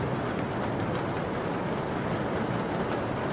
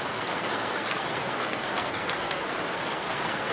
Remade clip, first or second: second